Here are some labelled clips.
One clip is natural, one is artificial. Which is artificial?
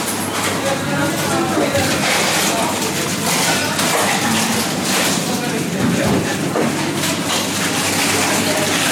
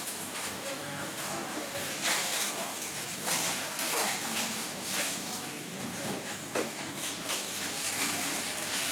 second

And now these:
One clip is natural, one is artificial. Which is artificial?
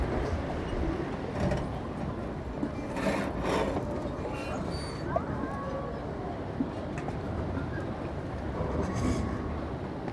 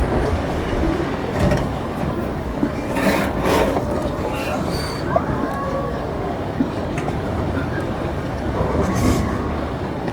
second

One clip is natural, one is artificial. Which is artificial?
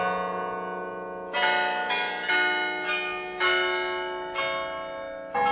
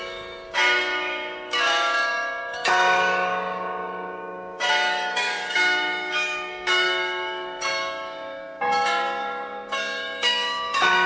second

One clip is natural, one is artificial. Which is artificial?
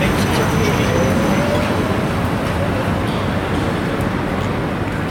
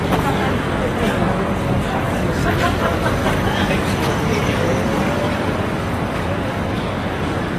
second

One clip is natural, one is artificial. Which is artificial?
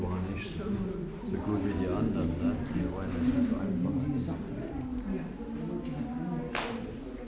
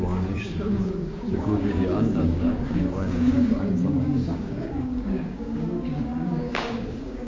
second